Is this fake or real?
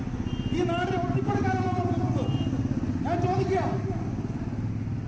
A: real